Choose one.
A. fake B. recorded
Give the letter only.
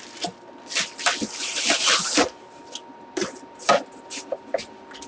B